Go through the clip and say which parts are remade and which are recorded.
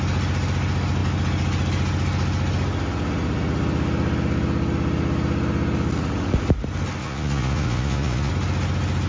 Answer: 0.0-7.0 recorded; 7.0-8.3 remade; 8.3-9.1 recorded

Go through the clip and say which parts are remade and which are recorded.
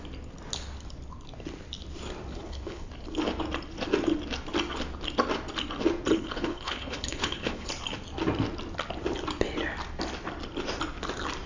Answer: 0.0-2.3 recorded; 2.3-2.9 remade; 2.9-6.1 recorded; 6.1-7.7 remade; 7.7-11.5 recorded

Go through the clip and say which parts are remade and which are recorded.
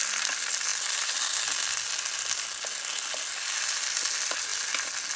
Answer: 0.0-5.2 recorded